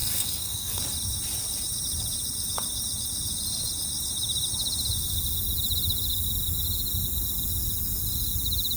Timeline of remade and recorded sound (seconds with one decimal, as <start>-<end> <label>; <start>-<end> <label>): 0.0-0.8 remade; 0.8-8.8 recorded